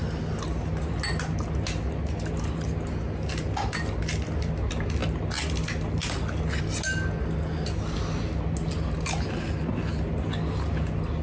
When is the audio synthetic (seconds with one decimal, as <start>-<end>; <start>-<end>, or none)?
none